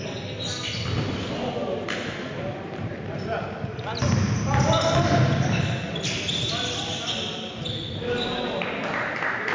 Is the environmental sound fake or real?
real